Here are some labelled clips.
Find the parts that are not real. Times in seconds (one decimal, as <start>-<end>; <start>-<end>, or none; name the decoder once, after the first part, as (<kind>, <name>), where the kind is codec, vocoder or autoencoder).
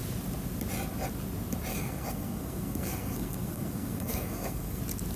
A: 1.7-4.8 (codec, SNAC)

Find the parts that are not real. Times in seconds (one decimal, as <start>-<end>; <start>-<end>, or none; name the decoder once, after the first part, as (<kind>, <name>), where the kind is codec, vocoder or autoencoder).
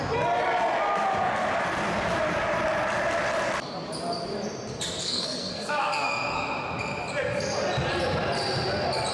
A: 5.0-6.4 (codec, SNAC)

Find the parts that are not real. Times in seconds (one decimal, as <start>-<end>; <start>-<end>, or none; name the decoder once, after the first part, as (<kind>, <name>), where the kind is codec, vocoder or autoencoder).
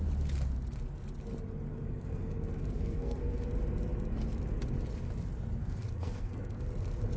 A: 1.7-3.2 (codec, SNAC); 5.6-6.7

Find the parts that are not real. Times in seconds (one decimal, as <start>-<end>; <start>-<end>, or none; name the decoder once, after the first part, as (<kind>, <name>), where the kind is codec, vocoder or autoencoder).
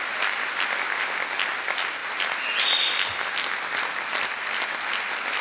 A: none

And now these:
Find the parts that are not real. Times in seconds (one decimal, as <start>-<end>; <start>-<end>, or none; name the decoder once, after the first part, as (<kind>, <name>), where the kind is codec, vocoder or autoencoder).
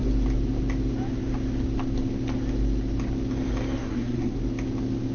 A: 3.8-4.4 (codec, SNAC)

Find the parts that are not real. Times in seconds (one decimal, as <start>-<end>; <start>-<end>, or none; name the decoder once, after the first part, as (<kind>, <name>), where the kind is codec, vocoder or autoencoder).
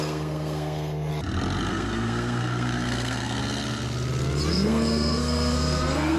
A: 0.0-1.1 (codec, SNAC); 1.7-3.4; 4.5-6.2